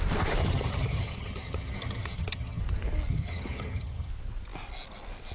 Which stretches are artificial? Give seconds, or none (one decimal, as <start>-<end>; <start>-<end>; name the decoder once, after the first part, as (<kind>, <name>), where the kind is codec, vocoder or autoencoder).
0.4-2.6 (vocoder, HiFi-GAN); 3.1-4.1